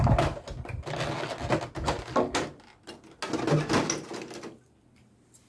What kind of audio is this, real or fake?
real